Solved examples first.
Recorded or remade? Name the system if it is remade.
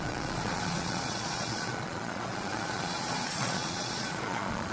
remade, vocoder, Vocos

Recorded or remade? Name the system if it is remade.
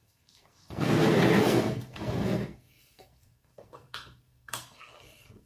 remade, codec, SNAC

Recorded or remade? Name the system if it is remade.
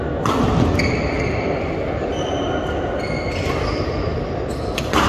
recorded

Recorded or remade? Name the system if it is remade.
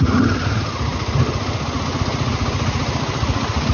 recorded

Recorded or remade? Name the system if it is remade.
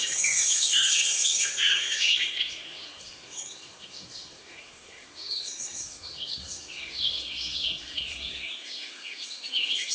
remade, codec, SNAC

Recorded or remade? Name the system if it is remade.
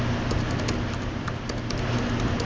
recorded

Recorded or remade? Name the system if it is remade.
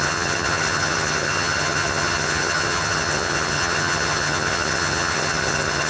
remade, vocoder, HiFi-GAN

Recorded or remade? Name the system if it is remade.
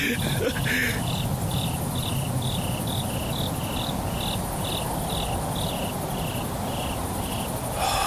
recorded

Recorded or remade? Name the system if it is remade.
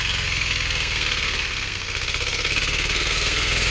remade, codec, SNAC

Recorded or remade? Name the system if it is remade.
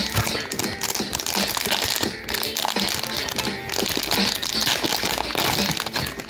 recorded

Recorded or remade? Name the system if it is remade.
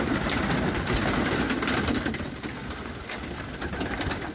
recorded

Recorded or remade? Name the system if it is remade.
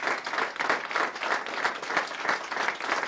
recorded